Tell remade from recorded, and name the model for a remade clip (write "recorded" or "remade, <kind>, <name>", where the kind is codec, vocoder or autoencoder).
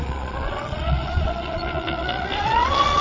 remade, vocoder, Vocos